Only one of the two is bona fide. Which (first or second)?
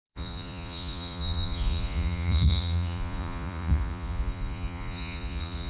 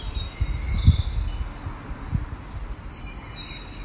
second